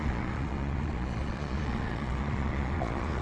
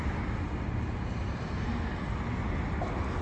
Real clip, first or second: second